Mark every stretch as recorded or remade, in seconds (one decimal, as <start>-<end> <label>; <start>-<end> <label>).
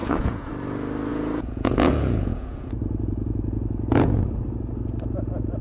0.0-0.5 remade; 0.5-1.1 recorded; 1.1-4.2 remade; 4.2-5.6 recorded